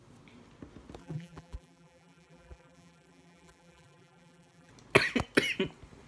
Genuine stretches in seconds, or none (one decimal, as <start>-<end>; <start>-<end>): 0.0-1.0; 4.7-6.1